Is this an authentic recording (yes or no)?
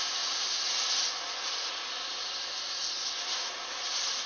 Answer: yes